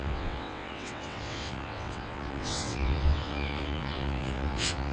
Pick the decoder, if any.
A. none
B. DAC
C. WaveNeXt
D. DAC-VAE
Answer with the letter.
C